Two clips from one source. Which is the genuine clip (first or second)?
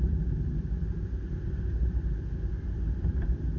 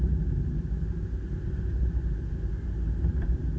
second